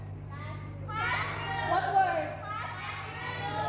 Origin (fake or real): real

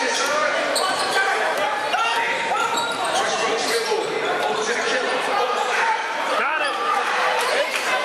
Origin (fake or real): fake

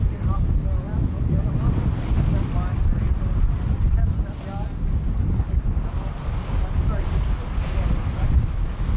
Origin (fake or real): real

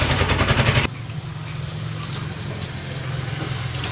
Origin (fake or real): real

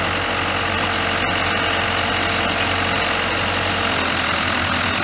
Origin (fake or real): real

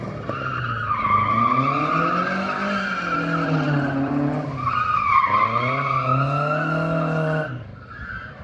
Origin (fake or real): real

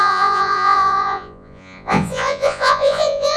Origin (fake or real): fake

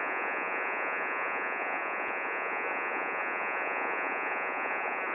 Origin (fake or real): fake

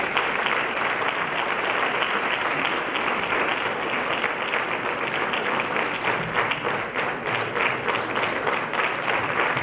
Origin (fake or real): real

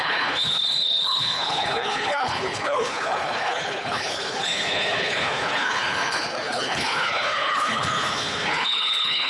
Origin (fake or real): fake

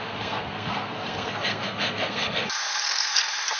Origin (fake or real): fake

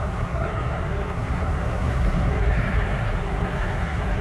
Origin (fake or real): fake